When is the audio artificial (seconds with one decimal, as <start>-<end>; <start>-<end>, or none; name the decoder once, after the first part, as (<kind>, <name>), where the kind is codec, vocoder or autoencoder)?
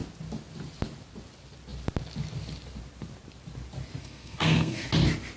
4.0-4.9 (codec, SNAC)